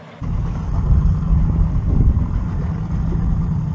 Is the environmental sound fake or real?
real